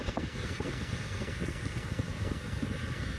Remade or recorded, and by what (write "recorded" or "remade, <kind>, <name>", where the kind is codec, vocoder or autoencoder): remade, codec, SNAC